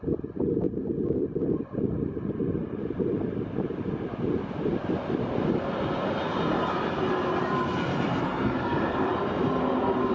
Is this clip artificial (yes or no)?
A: no